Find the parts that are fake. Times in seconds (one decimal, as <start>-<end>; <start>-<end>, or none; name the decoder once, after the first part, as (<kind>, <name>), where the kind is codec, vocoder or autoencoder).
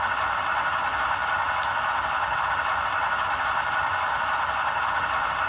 none